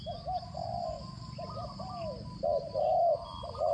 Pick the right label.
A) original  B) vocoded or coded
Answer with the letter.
A